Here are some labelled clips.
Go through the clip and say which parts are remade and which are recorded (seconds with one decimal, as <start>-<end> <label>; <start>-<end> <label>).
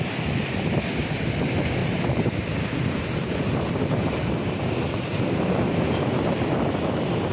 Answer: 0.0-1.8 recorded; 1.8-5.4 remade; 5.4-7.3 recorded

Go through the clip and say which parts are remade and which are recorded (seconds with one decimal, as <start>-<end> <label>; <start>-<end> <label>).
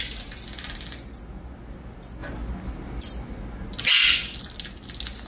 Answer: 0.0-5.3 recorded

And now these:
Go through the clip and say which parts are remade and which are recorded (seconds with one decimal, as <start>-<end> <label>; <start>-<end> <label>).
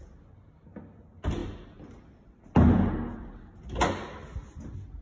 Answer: 0.0-5.0 recorded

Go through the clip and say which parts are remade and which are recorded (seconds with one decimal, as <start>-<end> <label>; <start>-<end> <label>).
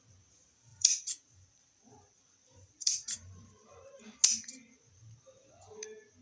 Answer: 0.0-0.7 recorded; 0.7-4.0 remade; 4.0-6.2 recorded